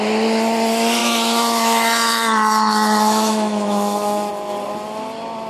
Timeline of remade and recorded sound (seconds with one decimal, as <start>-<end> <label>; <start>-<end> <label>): 0.0-1.0 recorded; 1.0-4.3 remade; 4.3-5.5 recorded